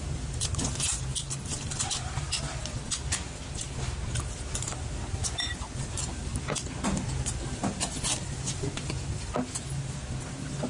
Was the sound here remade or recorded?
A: recorded